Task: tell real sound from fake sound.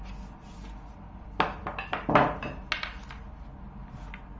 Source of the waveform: real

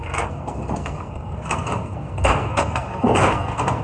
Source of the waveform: fake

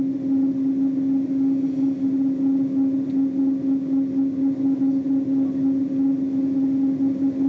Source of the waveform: real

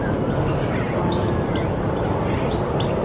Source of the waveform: real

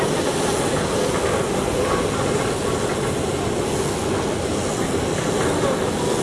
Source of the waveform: real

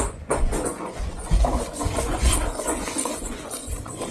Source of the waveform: fake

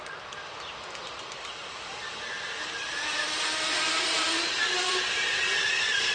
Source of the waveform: fake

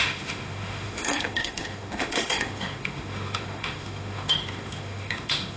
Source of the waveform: fake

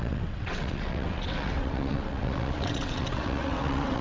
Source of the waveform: fake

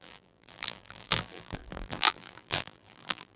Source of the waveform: fake